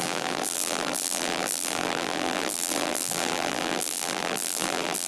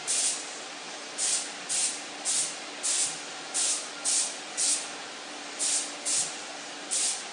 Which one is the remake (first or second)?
first